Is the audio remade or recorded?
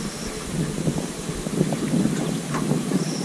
recorded